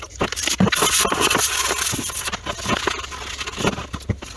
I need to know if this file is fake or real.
real